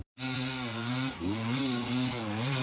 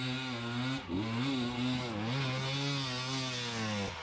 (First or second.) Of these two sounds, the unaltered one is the second